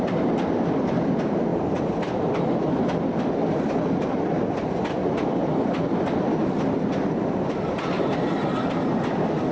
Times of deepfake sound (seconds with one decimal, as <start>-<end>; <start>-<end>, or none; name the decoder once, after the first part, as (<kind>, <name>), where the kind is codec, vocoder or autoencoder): none